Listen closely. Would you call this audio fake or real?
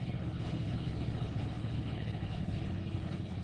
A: fake